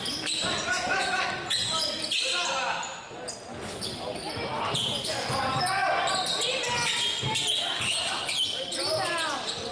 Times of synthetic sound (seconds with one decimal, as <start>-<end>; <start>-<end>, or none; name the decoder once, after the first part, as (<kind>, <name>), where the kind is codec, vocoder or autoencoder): 0.7-1.2 (autoencoder, DAC-VAE)